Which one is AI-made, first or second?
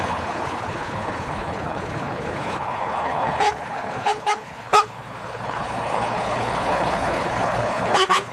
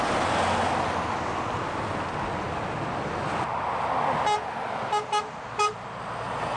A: first